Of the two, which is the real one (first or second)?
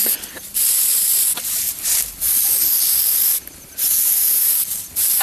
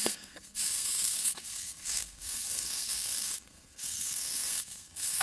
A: first